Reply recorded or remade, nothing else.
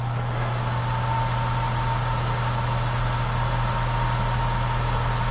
recorded